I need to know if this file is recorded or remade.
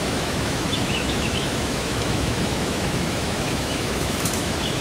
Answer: remade